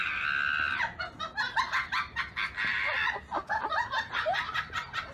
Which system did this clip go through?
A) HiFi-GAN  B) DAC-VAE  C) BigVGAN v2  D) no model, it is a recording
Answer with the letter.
D